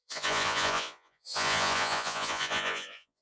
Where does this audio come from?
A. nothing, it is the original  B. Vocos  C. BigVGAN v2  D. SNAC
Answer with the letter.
B